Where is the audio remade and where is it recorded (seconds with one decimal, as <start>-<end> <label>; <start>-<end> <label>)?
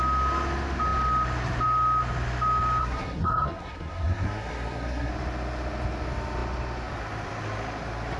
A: 0.0-2.8 recorded; 2.8-5.1 remade; 5.1-8.2 recorded